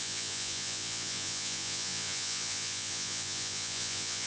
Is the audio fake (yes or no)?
yes